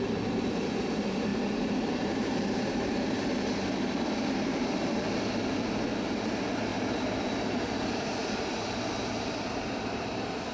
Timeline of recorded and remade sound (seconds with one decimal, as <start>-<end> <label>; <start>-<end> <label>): 0.0-1.3 recorded; 1.3-6.3 remade; 6.3-6.7 recorded; 6.7-8.4 remade; 8.4-10.5 recorded